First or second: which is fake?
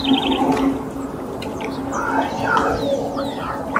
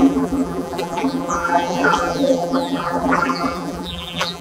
second